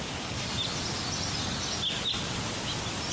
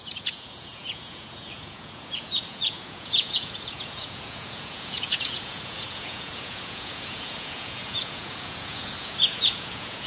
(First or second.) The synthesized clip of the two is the second